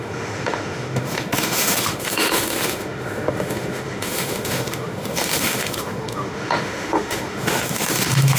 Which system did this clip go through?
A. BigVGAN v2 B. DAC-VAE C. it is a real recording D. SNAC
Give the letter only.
B